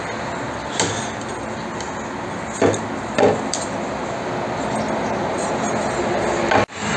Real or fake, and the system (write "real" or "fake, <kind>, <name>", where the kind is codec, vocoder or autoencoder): real